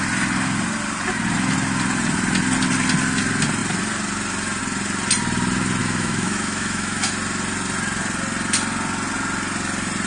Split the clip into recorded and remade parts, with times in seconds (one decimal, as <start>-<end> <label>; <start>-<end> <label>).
0.0-5.8 recorded; 5.8-7.1 remade; 7.1-10.1 recorded